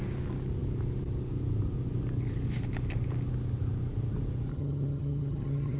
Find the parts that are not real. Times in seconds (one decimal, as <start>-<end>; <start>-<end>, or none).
4.5-5.8